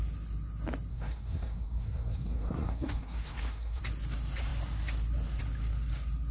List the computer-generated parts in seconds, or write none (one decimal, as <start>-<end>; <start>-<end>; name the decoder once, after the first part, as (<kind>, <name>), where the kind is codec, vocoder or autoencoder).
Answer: 0.9-3.8 (codec, SNAC)

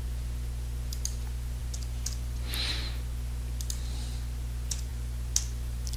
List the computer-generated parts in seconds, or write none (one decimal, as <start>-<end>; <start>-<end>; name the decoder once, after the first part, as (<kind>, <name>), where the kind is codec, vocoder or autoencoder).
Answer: none

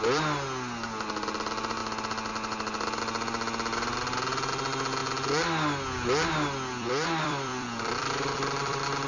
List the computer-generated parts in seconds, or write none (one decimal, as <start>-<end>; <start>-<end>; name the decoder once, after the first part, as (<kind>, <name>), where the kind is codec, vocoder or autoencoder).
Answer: 6.8-9.1 (vocoder, BigVGAN v2)

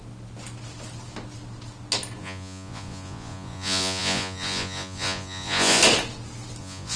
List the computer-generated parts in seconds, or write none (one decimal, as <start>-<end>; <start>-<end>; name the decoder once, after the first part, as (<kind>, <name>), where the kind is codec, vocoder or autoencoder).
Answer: 2.2-5.8 (vocoder, Vocos); 6.6-7.0

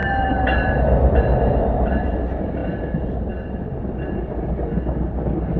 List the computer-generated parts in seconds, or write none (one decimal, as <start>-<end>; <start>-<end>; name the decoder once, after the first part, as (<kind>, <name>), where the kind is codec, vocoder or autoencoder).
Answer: 0.0-0.8 (vocoder, BigVGAN v2)